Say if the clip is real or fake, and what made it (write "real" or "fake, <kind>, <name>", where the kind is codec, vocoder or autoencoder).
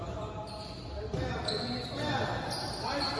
real